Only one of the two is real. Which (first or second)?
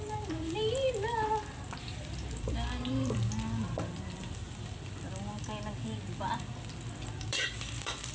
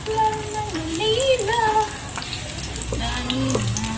second